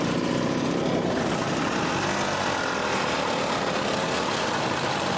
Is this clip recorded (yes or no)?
yes